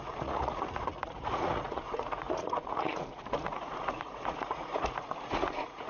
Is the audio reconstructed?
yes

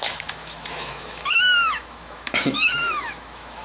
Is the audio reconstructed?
yes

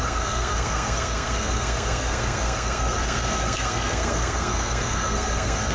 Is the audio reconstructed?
yes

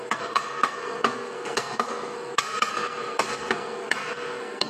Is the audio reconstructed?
yes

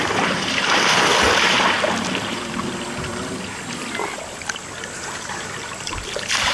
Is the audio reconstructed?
yes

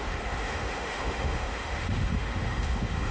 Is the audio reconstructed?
yes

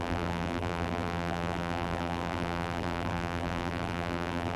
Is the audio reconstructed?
yes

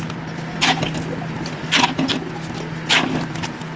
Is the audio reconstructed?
no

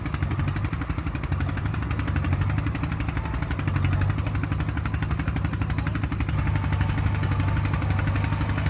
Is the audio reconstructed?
no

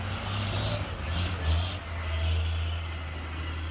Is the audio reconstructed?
no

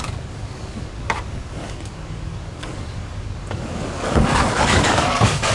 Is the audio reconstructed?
yes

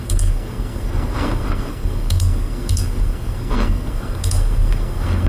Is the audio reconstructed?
yes